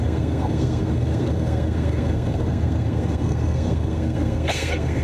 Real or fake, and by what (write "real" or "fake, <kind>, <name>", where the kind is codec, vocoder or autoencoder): fake, codec, SNAC